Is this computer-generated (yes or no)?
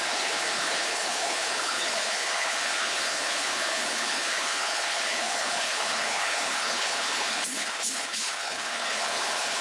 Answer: yes